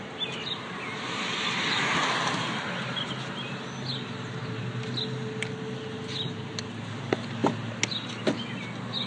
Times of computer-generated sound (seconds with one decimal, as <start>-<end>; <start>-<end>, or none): none